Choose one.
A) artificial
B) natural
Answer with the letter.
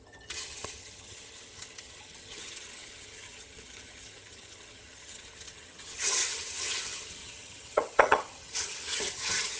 A